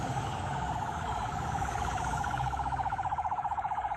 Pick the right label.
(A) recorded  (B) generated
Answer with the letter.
B